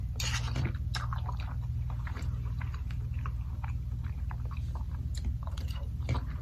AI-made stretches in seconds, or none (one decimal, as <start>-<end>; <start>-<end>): 5.1-5.9